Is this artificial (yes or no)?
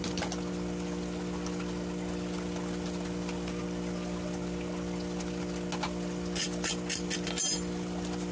no